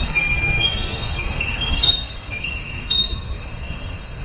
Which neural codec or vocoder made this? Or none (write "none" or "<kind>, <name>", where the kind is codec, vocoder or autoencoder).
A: codec, SNAC